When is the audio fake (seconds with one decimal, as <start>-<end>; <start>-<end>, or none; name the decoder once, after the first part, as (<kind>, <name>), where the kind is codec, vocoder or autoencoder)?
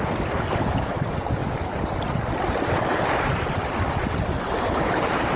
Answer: none